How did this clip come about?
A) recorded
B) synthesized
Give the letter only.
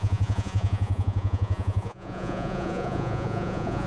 B